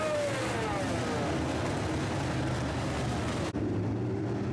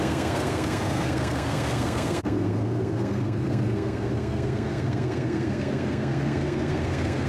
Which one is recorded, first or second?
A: first